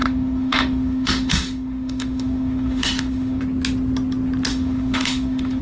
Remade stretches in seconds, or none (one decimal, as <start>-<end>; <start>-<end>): 0.0-3.4; 4.5-5.6